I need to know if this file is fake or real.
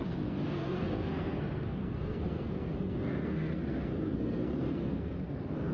fake